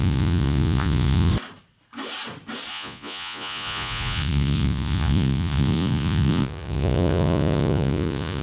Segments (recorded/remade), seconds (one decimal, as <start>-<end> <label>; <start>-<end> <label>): 0.0-1.3 remade; 1.3-2.7 recorded; 2.7-8.4 remade